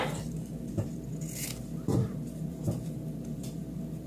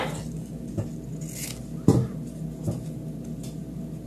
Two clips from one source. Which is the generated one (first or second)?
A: first